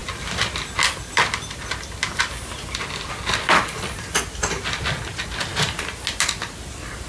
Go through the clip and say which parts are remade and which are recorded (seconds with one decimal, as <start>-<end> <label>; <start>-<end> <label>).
0.0-7.1 recorded